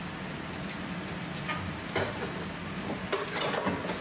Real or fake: real